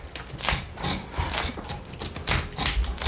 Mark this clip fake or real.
real